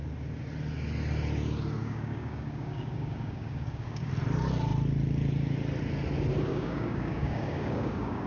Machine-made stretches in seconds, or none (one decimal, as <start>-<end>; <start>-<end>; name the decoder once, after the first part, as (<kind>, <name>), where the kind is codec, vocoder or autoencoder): 1.8-4.1 (codec, DAC); 6.5-8.3

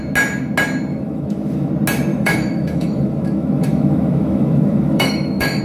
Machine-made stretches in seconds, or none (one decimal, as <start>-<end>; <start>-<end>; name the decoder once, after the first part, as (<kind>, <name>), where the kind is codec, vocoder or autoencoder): 0.9-1.7 (autoencoder, DAC-VAE); 2.1-5.6